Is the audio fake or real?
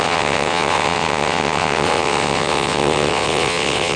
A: fake